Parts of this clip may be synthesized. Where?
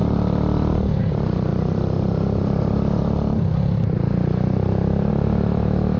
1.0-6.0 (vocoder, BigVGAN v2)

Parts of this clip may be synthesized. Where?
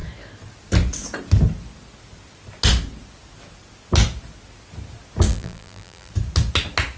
5.3-6.1 (vocoder, BigVGAN v2)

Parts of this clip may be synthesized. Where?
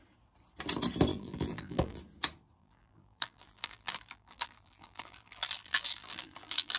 1.1-2.0 (vocoder, BigVGAN v2); 2.6-6.8